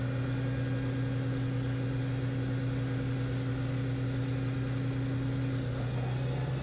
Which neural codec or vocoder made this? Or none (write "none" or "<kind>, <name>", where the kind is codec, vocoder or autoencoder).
none